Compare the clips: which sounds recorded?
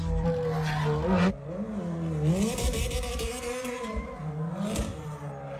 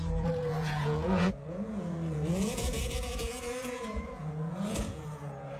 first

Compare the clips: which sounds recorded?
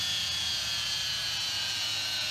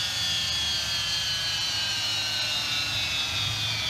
second